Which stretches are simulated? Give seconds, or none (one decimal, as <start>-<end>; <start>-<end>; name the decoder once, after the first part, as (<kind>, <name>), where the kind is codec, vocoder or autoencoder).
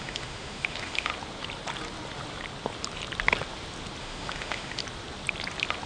0.0-1.1 (autoencoder, DAC-VAE); 4.0-4.8